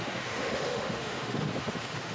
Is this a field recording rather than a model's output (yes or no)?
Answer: no